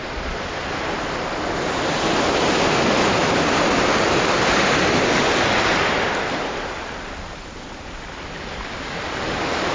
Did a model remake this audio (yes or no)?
no